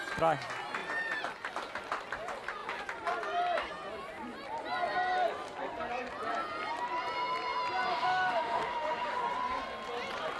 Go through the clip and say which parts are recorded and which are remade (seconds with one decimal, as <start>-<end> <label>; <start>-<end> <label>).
0.0-7.9 recorded; 7.9-9.2 remade; 9.2-10.4 recorded